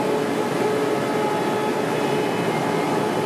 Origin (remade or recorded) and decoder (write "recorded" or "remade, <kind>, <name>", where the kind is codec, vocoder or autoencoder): recorded